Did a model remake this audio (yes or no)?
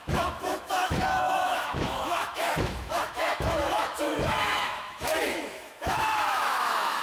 yes